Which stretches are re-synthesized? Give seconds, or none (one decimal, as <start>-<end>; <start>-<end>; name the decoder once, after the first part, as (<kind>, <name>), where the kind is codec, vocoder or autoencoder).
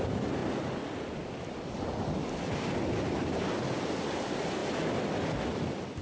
none